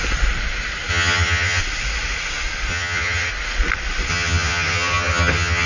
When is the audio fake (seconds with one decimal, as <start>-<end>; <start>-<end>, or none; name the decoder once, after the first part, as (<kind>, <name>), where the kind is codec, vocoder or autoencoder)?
0.9-1.6 (vocoder, HiFi-GAN); 2.7-3.3; 4.1-5.7